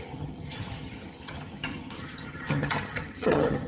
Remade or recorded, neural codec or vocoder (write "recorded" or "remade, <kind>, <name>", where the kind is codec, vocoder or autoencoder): remade, vocoder, HiFi-GAN